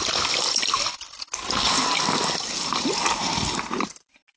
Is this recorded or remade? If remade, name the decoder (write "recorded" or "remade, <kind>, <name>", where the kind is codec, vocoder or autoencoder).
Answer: recorded